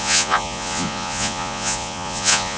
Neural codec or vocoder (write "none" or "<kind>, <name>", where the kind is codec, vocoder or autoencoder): vocoder, Vocos